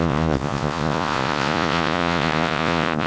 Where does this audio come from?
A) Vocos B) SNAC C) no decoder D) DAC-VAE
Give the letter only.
A